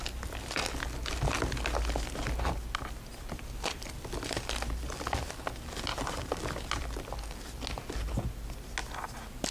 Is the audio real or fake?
real